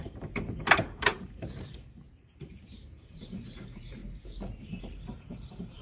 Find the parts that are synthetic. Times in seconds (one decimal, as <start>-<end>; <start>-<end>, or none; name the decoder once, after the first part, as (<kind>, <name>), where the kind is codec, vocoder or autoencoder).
0.0-4.0 (vocoder, BigVGAN v2); 4.8-5.8